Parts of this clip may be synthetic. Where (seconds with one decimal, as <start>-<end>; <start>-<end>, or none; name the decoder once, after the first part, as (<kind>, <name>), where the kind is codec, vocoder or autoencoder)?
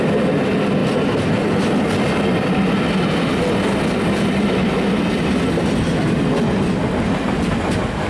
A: none